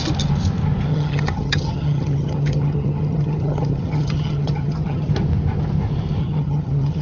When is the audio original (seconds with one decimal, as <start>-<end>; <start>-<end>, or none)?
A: 0.0-0.9; 5.1-6.2